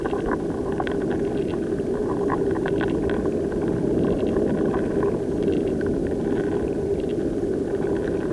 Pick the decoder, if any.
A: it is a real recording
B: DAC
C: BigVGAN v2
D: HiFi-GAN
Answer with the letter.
A